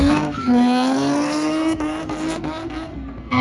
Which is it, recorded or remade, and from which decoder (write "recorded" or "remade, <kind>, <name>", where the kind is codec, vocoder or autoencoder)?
remade, codec, SNAC